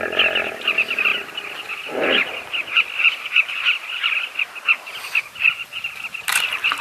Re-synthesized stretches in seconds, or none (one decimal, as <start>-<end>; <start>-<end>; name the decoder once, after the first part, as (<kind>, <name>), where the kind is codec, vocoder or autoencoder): none